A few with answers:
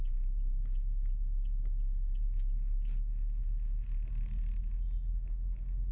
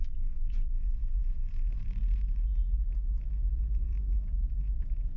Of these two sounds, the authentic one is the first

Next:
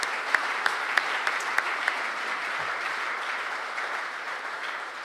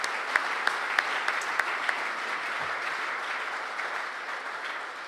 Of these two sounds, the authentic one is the second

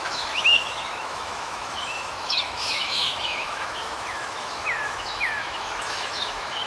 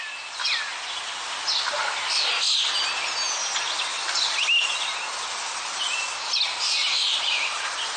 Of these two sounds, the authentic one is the second